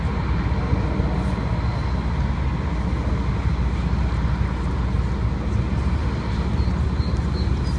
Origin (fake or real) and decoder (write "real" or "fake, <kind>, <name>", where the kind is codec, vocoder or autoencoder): real